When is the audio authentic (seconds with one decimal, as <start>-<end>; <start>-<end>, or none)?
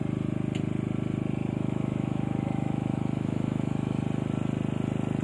0.0-1.4; 4.0-5.2